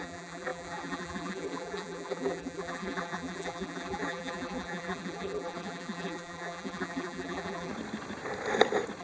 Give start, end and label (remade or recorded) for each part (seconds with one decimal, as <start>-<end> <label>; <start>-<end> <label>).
0.0-7.7 remade; 7.7-9.0 recorded